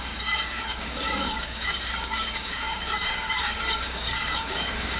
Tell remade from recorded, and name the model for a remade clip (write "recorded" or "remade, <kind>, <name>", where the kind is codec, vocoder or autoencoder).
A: remade, codec, DAC